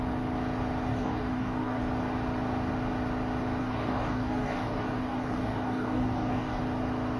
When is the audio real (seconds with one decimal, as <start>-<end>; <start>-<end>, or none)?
0.0-0.9; 1.8-3.6; 6.6-7.2